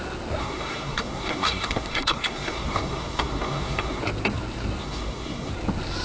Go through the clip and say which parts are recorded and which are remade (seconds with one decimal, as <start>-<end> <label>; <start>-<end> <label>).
0.0-0.4 recorded; 0.4-4.0 remade; 4.0-4.8 recorded; 4.8-5.5 remade; 5.5-6.0 recorded